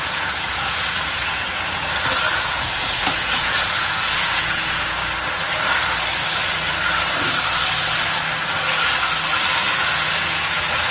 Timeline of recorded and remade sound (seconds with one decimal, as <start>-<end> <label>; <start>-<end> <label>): 0.0-1.8 remade; 1.8-2.4 recorded; 2.4-5.0 remade; 5.0-9.6 recorded; 9.6-10.9 remade